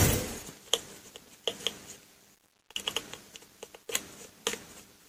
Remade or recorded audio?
recorded